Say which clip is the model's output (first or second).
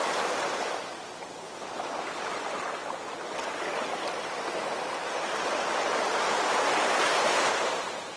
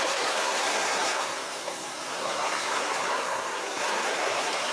second